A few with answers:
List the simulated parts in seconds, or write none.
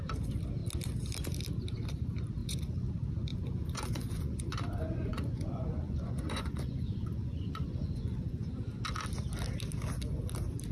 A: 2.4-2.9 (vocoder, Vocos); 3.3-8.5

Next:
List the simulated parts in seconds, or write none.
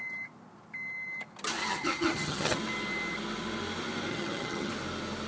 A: 1.6-2.6 (vocoder, HiFi-GAN); 4.1-4.7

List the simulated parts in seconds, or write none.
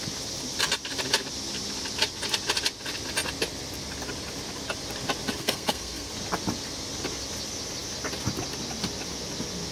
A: 5.4-6.1 (codec, SNAC)